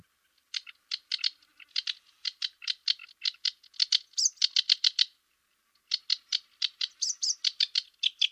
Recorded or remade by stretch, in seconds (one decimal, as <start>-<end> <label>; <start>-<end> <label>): 0.0-8.3 recorded